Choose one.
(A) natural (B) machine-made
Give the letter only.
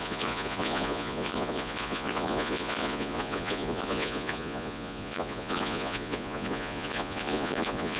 B